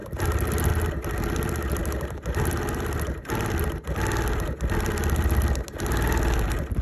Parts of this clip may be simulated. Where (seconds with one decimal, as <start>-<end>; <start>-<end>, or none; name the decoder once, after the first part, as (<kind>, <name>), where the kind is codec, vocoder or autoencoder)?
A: none

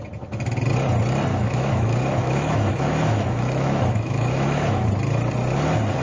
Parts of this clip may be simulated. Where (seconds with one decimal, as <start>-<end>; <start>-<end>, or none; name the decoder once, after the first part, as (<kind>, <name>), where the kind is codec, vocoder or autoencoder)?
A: 1.3-4.9 (autoencoder, DAC-VAE)

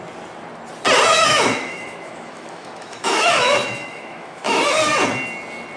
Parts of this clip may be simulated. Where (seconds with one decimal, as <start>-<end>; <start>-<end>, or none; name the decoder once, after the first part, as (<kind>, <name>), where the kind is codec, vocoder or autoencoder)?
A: 1.1-4.6 (autoencoder, DAC-VAE)

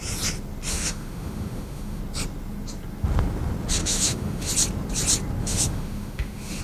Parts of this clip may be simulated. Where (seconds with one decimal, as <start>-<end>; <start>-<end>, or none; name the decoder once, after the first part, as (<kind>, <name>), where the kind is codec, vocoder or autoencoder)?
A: 0.7-2.0 (autoencoder, DAC-VAE); 3.8-4.5; 5.4-6.6

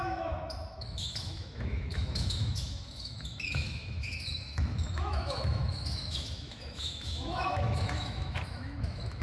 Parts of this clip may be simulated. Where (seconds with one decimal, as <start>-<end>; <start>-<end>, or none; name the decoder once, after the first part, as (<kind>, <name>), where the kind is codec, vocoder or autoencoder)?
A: 0.0-9.2 (autoencoder, DAC-VAE)